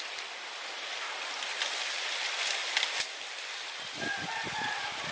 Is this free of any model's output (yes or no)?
no